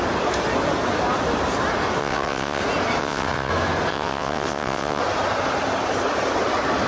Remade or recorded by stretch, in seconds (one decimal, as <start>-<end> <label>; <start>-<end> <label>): 0.0-2.0 recorded; 2.0-2.6 remade; 2.6-3.0 recorded; 3.0-3.5 remade; 3.5-3.9 recorded; 3.9-5.0 remade; 5.0-6.9 recorded